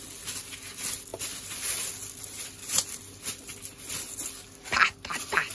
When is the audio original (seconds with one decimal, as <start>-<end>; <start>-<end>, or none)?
0.0-5.5